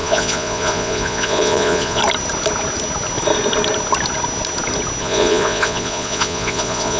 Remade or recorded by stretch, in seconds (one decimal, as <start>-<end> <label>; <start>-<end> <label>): 0.0-2.0 remade; 2.0-5.0 recorded; 5.0-7.0 remade